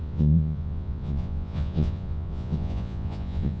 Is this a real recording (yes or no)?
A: no